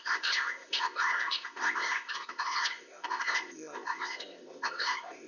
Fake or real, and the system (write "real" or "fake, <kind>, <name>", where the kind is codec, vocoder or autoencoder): fake, codec, ZipCodec